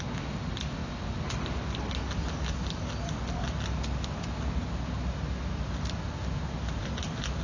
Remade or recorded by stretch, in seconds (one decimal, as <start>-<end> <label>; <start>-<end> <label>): 0.0-7.4 recorded

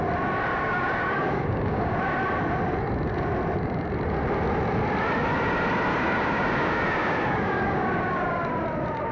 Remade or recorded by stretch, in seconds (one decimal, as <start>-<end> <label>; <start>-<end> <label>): 0.0-0.5 recorded; 0.5-2.0 remade; 2.0-5.9 recorded; 5.9-8.5 remade; 8.5-9.1 recorded

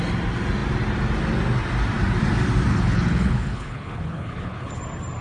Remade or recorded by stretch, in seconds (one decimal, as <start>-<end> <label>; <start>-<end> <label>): 0.0-2.7 recorded; 2.7-4.7 remade; 4.7-5.2 recorded

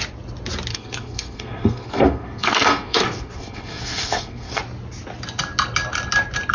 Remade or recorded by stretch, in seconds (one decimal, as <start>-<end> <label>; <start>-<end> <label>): 0.0-0.7 recorded; 0.7-4.6 remade; 4.6-6.5 recorded

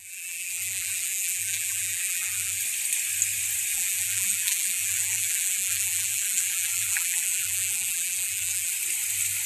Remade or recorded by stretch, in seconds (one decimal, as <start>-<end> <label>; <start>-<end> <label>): 0.0-2.6 remade; 2.6-3.7 recorded; 3.7-8.7 remade; 8.7-9.5 recorded